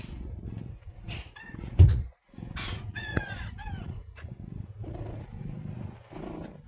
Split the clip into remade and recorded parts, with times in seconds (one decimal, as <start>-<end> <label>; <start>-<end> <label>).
0.0-5.3 remade; 5.3-6.7 recorded